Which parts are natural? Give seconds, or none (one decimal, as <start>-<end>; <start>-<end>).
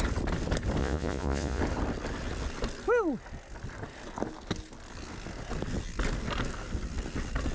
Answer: 0.0-0.8; 1.6-7.5